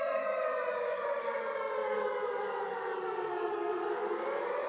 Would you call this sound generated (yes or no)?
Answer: yes